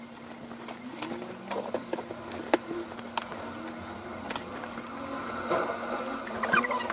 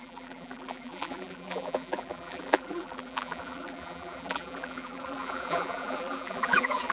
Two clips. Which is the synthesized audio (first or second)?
second